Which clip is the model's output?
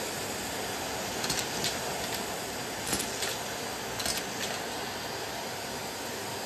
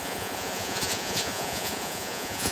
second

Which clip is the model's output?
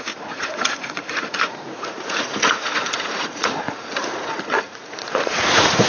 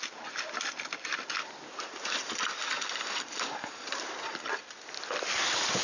first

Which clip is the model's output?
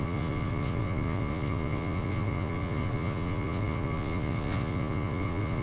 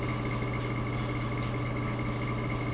first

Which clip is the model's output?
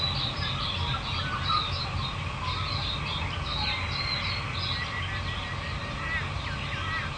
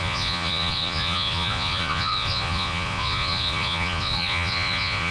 second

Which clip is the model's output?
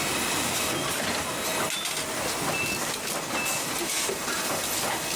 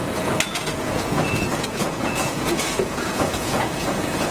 second